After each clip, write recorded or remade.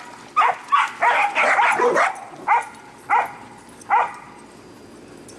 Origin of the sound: recorded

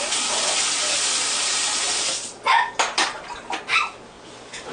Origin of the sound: recorded